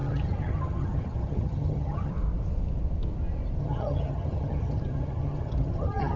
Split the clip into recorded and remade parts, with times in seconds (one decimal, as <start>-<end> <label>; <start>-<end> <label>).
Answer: 0.0-2.1 remade; 2.1-3.6 recorded; 3.6-6.2 remade